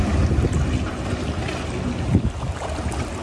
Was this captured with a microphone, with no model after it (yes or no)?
yes